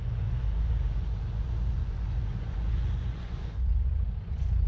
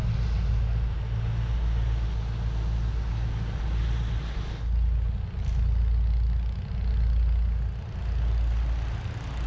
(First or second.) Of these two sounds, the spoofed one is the first